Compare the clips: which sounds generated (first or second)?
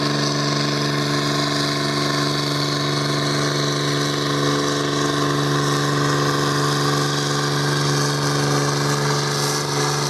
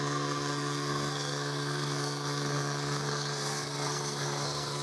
second